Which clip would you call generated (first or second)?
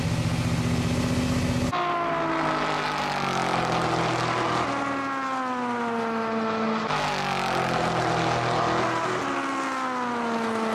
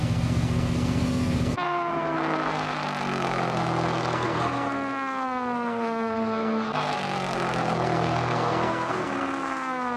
second